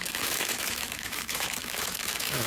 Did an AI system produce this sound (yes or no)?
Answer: yes